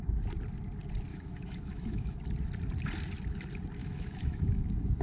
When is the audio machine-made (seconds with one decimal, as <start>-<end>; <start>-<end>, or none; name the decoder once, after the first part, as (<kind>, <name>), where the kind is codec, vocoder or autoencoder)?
1.1-2.2 (autoencoder, DAC-VAE); 3.8-4.6